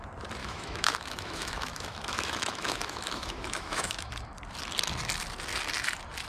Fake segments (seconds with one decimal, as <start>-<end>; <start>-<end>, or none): 0.4-4.1